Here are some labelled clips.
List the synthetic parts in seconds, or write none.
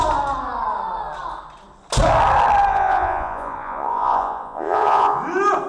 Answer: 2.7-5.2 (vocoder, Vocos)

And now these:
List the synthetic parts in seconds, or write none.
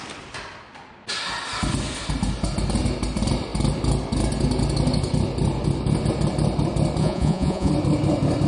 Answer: 7.0-7.7 (vocoder, Vocos)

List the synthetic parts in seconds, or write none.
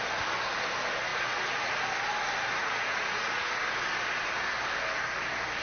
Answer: 1.1-1.8 (vocoder, Vocos); 2.6-3.6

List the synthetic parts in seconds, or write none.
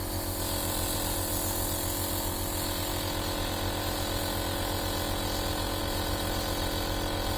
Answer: none